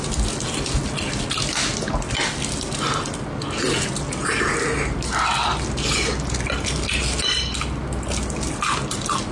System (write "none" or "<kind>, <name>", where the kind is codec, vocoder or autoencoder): none